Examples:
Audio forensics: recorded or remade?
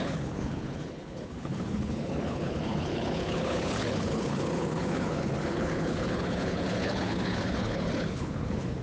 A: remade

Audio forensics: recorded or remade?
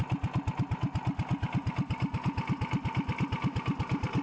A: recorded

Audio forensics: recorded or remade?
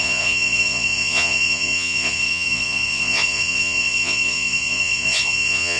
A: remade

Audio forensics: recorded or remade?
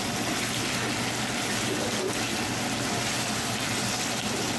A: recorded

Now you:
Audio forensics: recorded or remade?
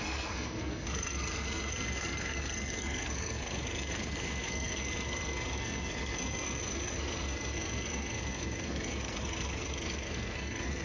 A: remade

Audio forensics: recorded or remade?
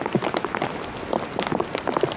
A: recorded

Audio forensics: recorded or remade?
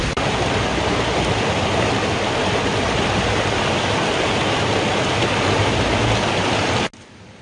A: recorded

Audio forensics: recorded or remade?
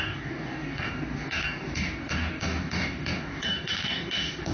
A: remade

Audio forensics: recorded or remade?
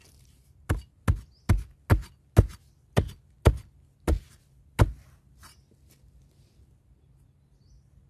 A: recorded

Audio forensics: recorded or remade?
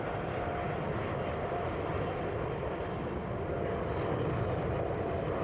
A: recorded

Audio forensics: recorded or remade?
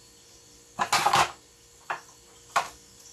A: recorded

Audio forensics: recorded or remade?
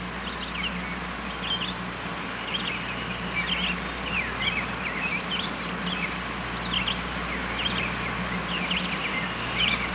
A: recorded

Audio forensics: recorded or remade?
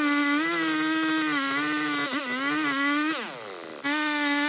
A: recorded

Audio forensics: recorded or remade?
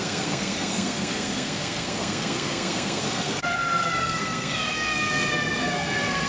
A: remade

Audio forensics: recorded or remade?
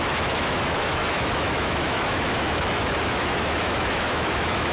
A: remade